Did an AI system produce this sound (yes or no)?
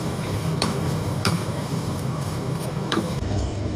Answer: yes